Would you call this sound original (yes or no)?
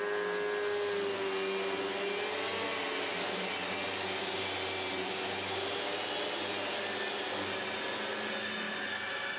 yes